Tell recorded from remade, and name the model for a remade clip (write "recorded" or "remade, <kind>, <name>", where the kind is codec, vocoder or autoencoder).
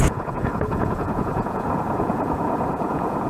remade, vocoder, Vocos